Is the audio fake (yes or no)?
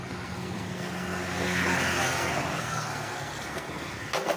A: yes